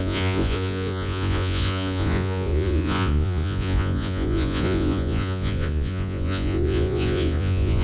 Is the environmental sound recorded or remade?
remade